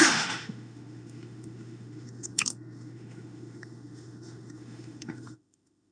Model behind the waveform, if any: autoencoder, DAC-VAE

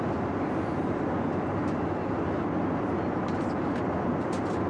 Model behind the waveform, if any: none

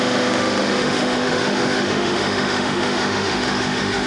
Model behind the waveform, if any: autoencoder, DAC-VAE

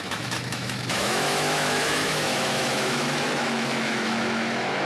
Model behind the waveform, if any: autoencoder, DAC-VAE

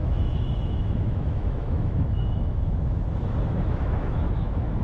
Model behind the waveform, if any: autoencoder, DAC-VAE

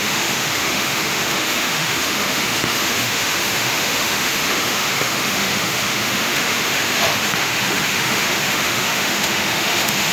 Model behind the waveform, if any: autoencoder, DAC-VAE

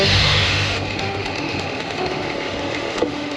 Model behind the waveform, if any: autoencoder, DAC-VAE